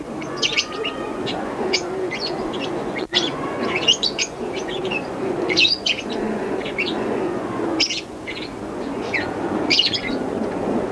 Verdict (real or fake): fake